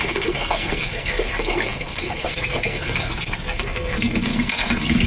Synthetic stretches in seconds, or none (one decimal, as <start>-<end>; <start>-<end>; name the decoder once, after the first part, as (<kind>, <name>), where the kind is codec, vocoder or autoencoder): 0.0-5.1 (codec, SNAC)